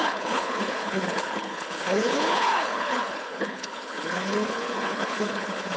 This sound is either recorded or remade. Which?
remade